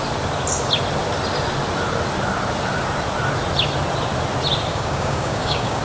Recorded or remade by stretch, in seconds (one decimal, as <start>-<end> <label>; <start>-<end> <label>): 0.0-4.7 recorded; 4.7-5.8 remade